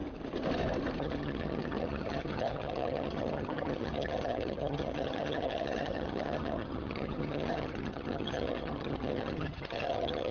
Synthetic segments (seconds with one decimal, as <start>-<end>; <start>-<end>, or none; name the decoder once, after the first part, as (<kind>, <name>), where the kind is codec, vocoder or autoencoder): 1.0-10.3 (vocoder, HiFi-GAN)